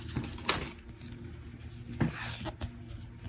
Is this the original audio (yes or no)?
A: yes